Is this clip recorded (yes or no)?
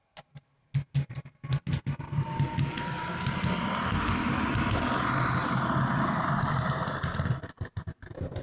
yes